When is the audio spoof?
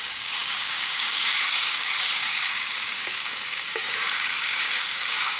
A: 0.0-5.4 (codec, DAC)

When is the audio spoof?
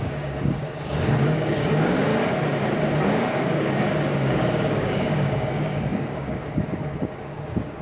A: 0.0-2.1 (codec, DAC); 3.1-7.8